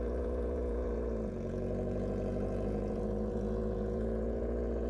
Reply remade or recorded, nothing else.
remade